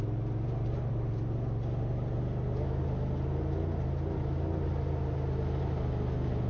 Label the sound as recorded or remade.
recorded